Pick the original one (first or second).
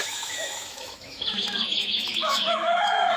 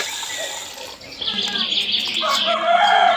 second